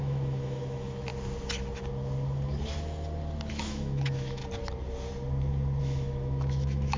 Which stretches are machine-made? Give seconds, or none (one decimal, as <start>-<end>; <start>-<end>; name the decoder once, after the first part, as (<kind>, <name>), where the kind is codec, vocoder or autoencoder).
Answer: 0.0-1.1 (autoencoder, DAC-VAE); 3.5-4.4; 5.8-7.0